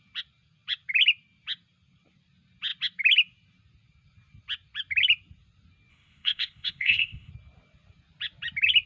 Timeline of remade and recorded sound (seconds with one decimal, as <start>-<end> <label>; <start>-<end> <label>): 0.0-5.9 recorded; 5.9-7.3 remade; 7.3-8.9 recorded